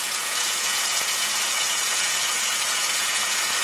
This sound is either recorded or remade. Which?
remade